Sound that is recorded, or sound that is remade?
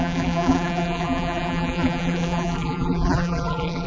remade